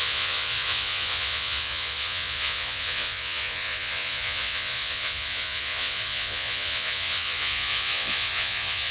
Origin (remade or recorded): remade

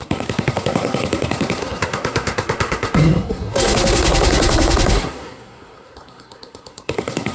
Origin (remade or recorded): remade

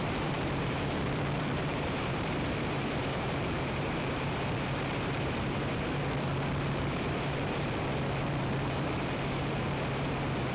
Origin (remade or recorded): remade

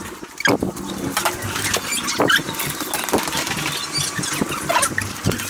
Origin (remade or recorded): recorded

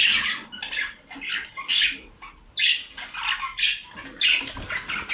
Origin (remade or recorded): recorded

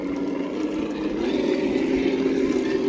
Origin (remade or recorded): recorded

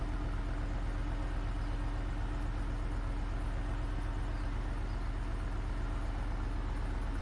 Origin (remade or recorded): recorded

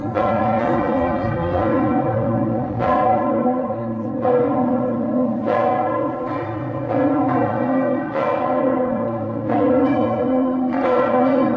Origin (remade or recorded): remade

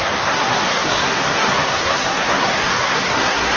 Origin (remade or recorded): remade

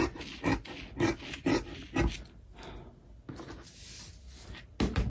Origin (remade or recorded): recorded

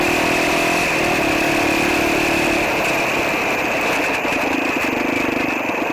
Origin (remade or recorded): recorded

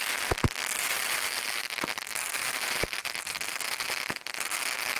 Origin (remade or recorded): remade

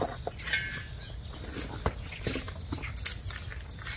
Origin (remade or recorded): recorded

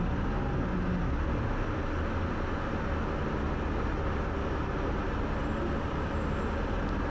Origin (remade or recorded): recorded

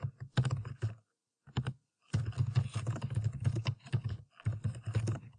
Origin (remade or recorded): recorded